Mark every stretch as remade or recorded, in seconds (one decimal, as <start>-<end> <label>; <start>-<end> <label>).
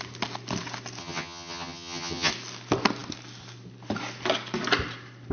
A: 0.0-1.0 recorded; 1.0-2.3 remade; 2.3-5.3 recorded